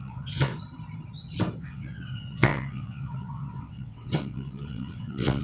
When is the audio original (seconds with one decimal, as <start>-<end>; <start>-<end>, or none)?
0.5-1.6